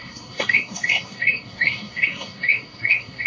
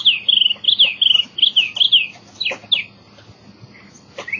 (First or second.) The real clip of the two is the second